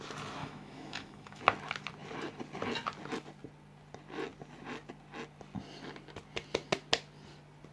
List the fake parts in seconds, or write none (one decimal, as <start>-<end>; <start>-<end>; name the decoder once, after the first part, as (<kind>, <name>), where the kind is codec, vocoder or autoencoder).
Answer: 0.4-1.4 (autoencoder, DAC-VAE)